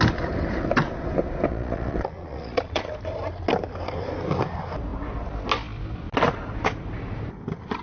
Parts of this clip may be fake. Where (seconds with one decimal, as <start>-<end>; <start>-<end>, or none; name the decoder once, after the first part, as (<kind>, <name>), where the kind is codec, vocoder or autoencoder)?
1.5-3.0 (vocoder, Vocos)